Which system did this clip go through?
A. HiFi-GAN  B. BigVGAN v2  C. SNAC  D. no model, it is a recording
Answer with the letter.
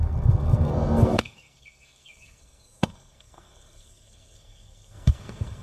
C